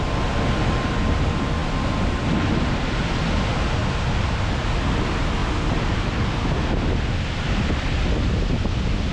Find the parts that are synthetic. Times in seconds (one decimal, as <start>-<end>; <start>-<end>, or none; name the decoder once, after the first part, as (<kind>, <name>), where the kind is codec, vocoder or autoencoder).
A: none